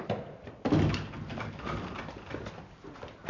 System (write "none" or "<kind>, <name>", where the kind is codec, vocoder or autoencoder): none